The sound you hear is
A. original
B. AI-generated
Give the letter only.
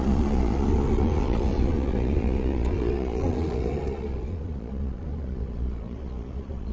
B